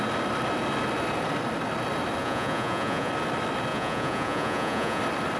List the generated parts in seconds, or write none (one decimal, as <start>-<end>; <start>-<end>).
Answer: 2.2-3.1; 3.7-5.0